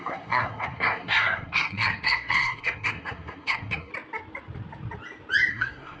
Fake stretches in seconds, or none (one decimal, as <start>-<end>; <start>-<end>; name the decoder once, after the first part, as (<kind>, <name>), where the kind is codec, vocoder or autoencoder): 0.0-3.9 (codec, SNAC); 5.5-6.0